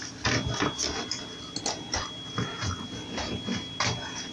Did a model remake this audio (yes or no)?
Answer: no